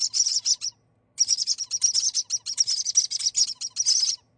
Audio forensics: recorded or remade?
recorded